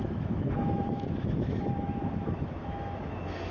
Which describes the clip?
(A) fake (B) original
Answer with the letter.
A